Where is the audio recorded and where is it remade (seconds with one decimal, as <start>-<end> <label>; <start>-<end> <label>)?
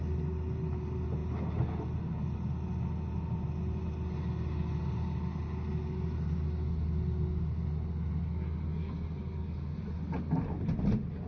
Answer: 0.0-11.3 recorded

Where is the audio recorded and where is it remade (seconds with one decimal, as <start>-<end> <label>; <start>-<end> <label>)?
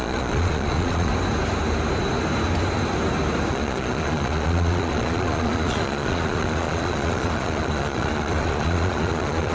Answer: 0.0-1.1 remade; 1.1-3.5 recorded; 3.5-9.5 remade